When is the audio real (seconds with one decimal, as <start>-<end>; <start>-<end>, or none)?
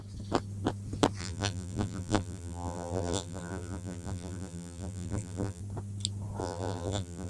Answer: 0.0-1.2; 5.6-6.4